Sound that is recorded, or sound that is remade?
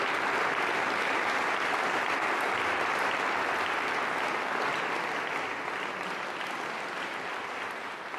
recorded